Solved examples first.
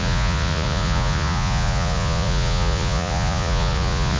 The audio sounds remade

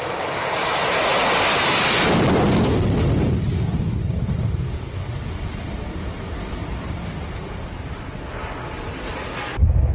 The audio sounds recorded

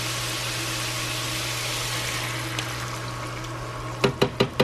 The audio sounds recorded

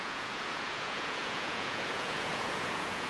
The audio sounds remade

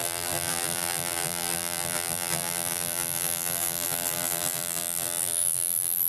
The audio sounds remade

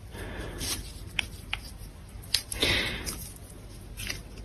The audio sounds recorded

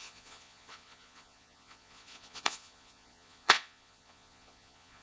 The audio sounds remade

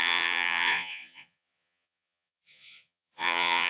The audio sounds remade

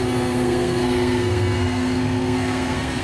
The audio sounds remade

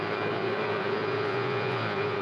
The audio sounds remade